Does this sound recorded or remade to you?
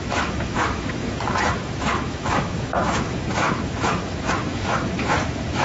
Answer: remade